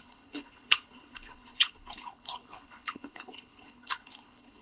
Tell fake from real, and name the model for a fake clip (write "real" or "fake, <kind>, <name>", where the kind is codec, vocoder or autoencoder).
fake, codec, HILCodec